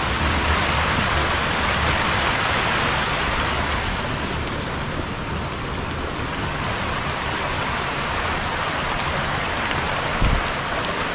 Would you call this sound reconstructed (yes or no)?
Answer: no